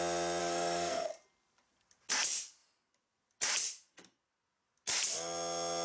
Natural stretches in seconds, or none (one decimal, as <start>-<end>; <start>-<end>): 0.0-0.4; 1.1-5.8